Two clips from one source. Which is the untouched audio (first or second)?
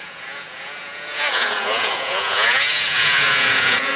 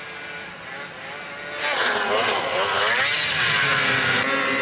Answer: second